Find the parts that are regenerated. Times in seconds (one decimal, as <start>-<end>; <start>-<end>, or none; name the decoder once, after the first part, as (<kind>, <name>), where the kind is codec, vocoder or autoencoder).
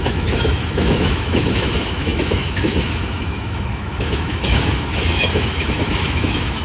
0.0-6.6 (autoencoder, DAC-VAE)